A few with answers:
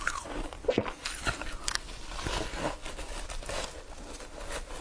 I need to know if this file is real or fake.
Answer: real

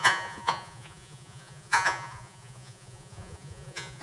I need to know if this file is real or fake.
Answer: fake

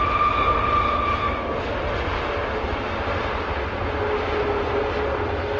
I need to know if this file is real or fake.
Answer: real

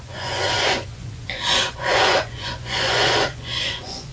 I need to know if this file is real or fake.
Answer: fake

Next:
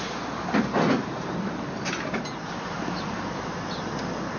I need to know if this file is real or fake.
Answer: real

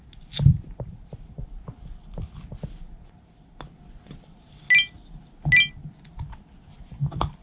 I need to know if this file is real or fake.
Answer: real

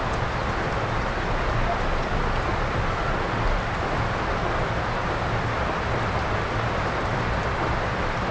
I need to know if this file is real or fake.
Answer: real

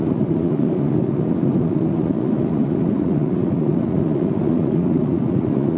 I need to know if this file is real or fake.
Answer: fake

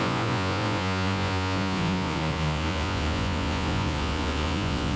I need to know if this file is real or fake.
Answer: fake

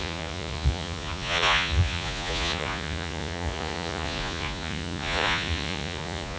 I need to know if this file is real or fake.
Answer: fake